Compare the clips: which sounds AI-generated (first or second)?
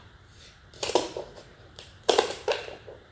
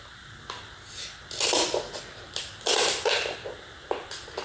first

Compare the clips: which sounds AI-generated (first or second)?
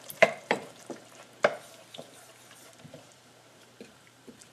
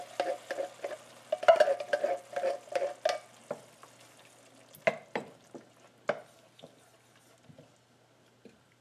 first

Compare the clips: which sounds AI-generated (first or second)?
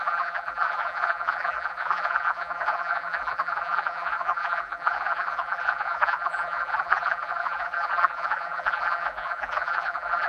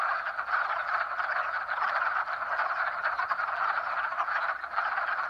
first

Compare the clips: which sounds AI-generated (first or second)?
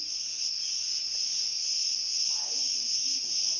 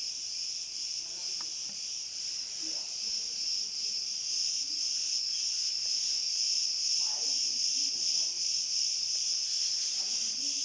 second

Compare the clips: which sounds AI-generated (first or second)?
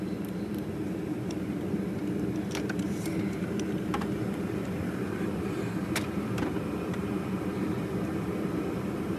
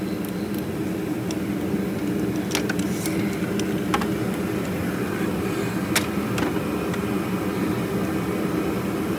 first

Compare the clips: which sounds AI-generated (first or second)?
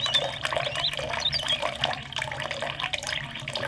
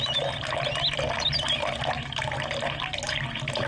first